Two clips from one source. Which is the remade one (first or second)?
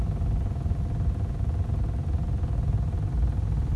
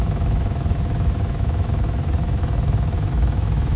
second